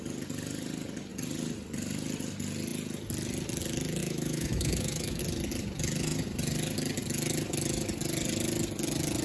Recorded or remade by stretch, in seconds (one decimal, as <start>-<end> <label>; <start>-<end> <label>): 0.0-4.0 recorded; 4.0-5.2 remade; 5.2-9.2 recorded